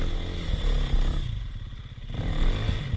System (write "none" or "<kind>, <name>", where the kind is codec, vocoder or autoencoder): none